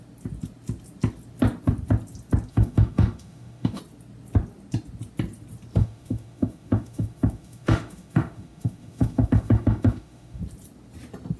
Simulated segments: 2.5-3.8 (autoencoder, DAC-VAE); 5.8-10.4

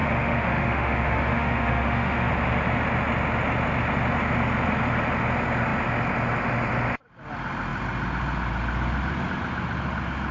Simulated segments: 0.0-2.3 (autoencoder, DAC-VAE)

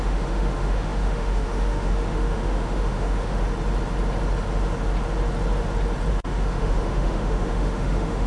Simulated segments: 0.0-3.4 (autoencoder, DAC-VAE); 6.1-8.3

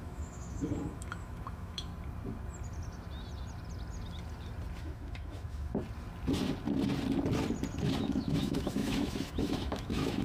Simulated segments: 0.0-1.9 (autoencoder, DAC-VAE); 4.8-5.7; 8.0-10.2

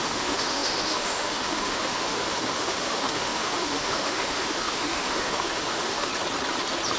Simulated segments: 0.0-6.1 (autoencoder, DAC-VAE)